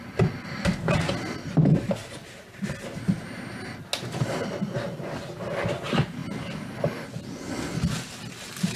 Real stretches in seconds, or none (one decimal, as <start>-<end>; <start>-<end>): 0.0-6.2; 6.8-8.8